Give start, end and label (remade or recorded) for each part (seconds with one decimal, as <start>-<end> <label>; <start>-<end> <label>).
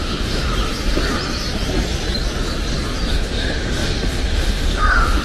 0.0-0.5 remade; 0.5-3.1 recorded; 3.1-5.2 remade